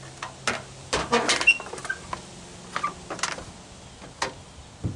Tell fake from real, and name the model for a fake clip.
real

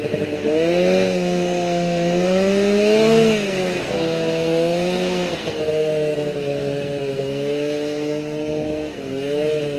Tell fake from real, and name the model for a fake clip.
fake, codec, SNAC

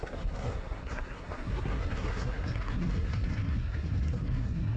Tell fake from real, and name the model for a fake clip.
fake, codec, SNAC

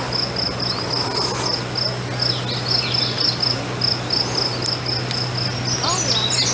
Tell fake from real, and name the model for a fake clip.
real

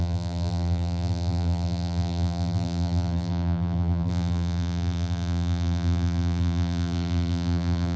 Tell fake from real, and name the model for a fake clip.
fake, vocoder, BigVGAN v2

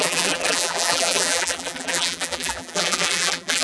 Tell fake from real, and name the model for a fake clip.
fake, vocoder, BigVGAN v2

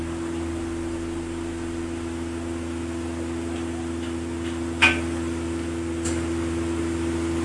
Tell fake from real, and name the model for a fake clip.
real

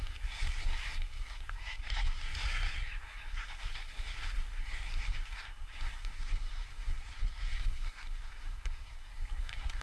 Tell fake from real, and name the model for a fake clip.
fake, codec, SNAC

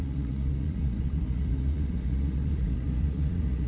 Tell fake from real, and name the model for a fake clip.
fake, vocoder, Vocos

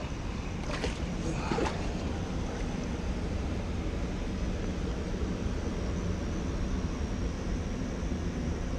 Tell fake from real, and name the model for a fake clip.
real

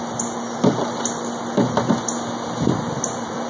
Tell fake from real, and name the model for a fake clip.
real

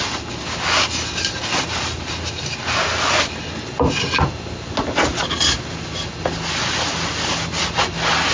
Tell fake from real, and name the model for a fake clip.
real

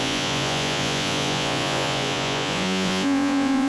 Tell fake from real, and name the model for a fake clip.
fake, vocoder, Vocos